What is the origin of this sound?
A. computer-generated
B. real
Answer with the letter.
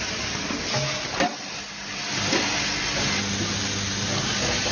B